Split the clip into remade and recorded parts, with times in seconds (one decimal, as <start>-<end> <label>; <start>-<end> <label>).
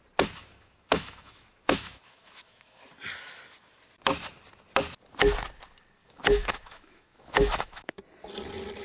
0.0-0.4 recorded; 0.4-2.8 remade; 2.8-6.0 recorded; 6.0-8.0 remade; 8.0-8.8 recorded